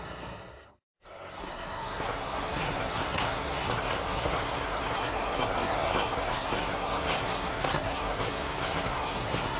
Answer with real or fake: fake